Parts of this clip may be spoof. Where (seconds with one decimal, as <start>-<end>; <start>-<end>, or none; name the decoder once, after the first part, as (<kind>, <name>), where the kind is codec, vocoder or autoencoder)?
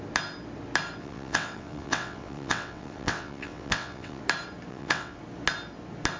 1.0-4.2 (vocoder, WaveNeXt); 4.7-5.2